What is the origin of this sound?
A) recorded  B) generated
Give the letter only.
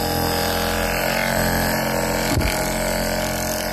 A